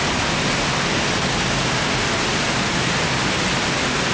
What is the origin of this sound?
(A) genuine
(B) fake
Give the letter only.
A